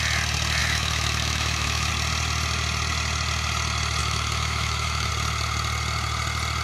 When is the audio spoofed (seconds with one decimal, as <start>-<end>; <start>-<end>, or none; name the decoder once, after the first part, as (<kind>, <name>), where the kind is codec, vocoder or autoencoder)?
0.6-1.9 (autoencoder, DAC-VAE); 4.0-5.1